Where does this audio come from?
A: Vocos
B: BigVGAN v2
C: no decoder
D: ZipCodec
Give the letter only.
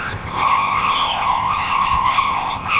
D